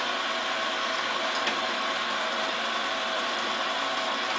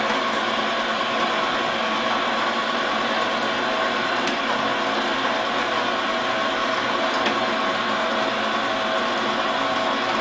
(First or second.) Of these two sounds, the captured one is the second